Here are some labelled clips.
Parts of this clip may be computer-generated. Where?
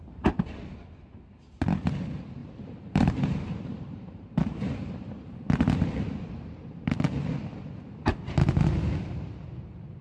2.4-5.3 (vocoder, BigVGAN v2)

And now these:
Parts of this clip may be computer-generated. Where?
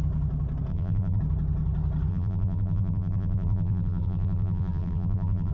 0.7-1.2 (vocoder, BigVGAN v2); 2.1-5.5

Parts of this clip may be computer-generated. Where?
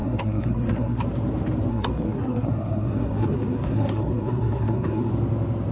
0.0-1.0 (codec, SNAC); 1.7-5.1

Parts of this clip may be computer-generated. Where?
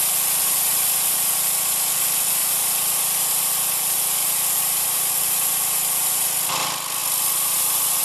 0.7-1.4 (vocoder, BigVGAN v2); 2.4-3.4; 4.2-5.0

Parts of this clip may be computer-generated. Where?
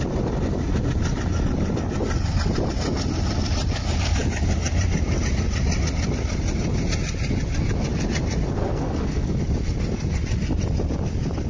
8.6-9.4 (codec, SNAC)